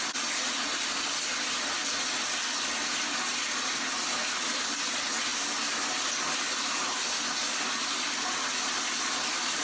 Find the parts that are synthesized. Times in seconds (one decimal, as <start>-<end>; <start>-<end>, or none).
none